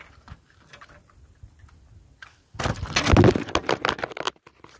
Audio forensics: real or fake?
real